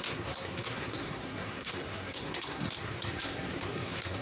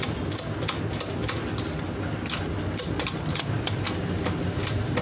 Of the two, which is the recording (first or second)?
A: second